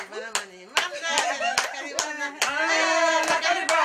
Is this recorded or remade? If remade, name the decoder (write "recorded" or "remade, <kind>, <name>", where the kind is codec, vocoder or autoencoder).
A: recorded